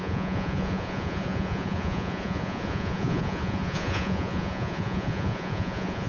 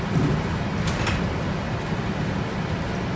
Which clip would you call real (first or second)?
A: second